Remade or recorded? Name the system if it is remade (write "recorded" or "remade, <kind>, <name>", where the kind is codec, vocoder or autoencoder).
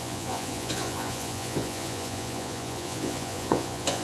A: remade, vocoder, Vocos